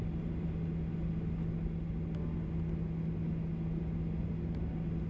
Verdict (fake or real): real